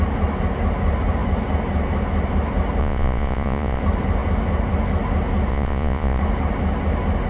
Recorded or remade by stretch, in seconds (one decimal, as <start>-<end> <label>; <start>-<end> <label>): 0.0-2.8 recorded; 2.8-3.8 remade; 3.8-5.5 recorded; 5.5-6.2 remade; 6.2-7.3 recorded